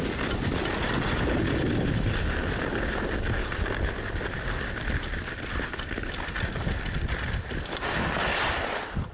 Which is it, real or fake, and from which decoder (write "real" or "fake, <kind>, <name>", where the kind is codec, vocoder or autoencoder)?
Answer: real